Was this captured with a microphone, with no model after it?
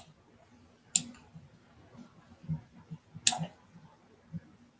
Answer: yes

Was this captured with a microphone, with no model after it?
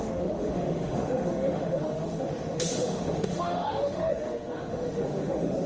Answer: no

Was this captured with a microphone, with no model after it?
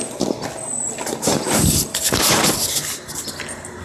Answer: yes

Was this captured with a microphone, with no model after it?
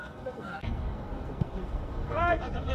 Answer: no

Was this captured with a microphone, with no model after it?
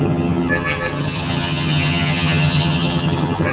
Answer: no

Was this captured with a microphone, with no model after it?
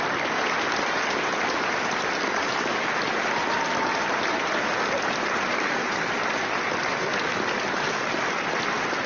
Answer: yes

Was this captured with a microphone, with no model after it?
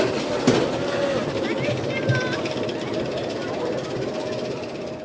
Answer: yes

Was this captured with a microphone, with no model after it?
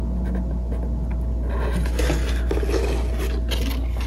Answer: yes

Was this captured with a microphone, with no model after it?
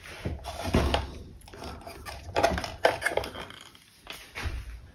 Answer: yes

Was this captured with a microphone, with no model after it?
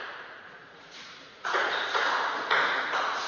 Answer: no